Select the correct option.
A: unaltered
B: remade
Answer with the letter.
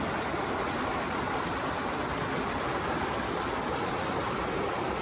A